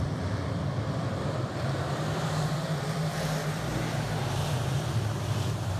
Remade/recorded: remade